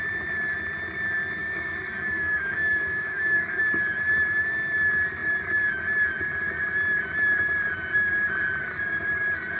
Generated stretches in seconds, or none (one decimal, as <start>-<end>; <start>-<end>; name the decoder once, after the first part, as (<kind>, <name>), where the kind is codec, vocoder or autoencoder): 1.4-3.6 (codec, DAC)